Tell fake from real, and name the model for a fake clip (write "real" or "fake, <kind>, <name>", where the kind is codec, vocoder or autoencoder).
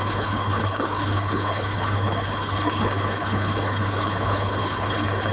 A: fake, codec, HILCodec